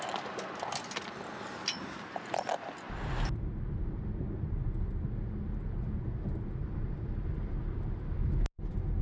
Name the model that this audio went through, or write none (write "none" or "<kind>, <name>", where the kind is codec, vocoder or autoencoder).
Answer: none